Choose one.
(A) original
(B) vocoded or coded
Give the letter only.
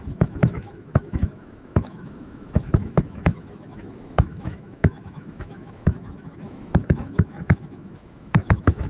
B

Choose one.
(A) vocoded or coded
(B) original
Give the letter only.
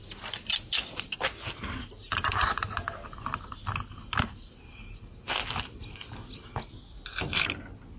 B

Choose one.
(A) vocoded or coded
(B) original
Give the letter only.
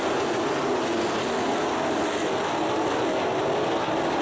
B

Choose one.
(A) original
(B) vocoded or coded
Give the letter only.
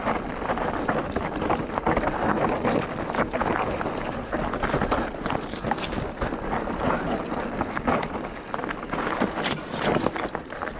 B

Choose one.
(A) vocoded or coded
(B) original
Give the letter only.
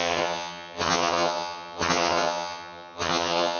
A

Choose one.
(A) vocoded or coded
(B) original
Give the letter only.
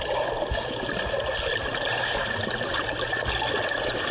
B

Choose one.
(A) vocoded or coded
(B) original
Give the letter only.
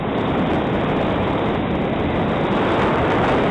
B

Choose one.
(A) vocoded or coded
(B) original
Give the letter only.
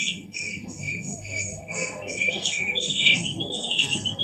A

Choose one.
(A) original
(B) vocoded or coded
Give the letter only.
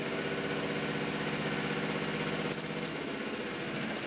A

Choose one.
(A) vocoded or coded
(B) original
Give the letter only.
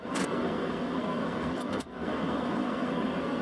A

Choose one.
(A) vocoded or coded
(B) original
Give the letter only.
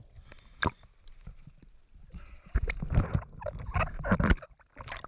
B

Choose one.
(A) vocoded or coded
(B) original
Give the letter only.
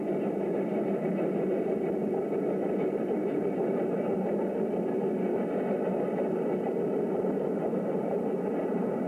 B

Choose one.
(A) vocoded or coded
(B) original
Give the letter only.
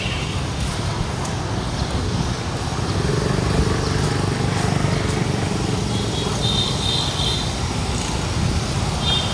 B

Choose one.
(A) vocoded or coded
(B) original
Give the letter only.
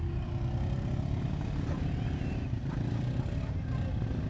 B